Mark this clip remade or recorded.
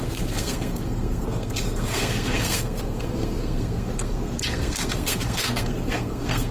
remade